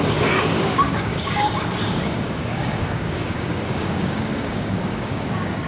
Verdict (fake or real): fake